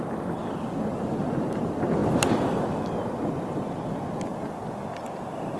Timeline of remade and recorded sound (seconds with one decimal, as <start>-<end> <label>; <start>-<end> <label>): 0.0-5.6 recorded